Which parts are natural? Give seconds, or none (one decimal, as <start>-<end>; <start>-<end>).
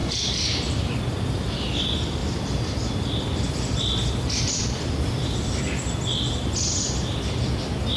1.0-2.2; 5.6-8.0